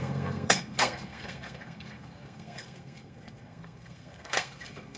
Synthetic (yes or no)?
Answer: yes